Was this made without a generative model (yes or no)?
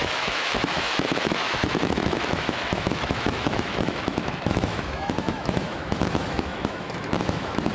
no